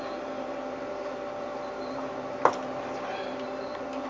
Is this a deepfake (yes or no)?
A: yes